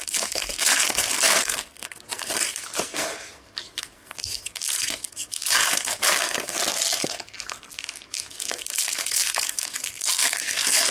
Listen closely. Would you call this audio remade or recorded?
remade